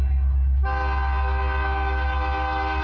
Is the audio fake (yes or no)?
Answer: no